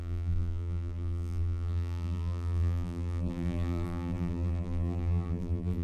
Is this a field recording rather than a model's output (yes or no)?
no